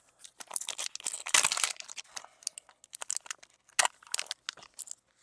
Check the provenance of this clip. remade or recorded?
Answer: recorded